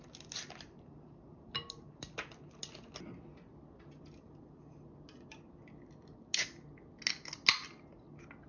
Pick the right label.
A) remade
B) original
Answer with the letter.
B